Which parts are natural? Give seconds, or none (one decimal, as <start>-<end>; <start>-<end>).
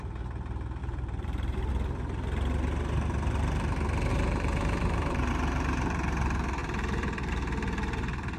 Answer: 0.0-0.8; 1.7-4.1; 5.3-6.6; 7.3-8.4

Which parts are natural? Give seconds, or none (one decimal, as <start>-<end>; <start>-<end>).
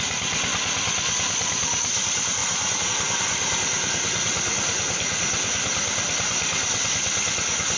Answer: 0.0-7.8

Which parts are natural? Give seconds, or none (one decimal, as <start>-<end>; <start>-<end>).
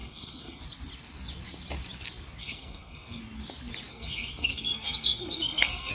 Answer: 0.6-2.4; 3.2-3.9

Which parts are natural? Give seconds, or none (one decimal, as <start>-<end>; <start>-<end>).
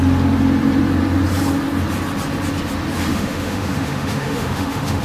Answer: 0.0-3.1